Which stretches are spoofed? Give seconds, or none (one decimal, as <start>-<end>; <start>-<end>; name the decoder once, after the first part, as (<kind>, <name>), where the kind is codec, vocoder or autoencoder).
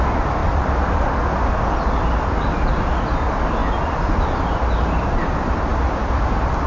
0.4-1.5 (vocoder, BigVGAN v2); 3.6-4.6; 5.7-6.7